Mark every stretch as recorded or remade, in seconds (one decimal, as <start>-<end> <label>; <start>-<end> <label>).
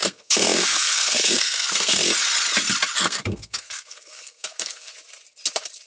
0.0-2.0 remade; 2.0-3.0 recorded; 3.0-4.9 remade; 4.9-5.9 recorded